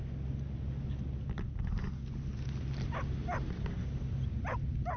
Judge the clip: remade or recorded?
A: recorded